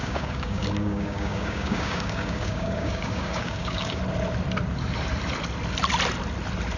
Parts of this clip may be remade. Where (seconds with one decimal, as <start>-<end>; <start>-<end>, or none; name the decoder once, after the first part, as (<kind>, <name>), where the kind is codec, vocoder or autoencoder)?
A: 0.0-4.0 (codec, DAC)